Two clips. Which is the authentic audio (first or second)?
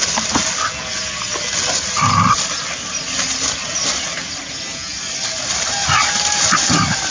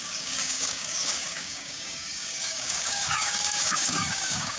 first